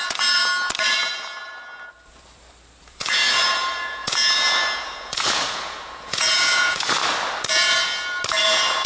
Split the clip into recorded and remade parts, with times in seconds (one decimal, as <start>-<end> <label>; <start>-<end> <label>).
0.0-0.4 remade; 0.4-2.8 recorded; 2.8-7.0 remade; 7.0-7.5 recorded; 7.5-7.9 remade; 7.9-8.4 recorded; 8.4-8.9 remade